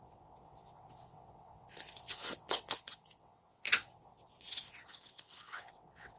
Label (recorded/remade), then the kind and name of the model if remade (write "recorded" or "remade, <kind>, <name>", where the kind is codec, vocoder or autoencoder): remade, vocoder, WaveNeXt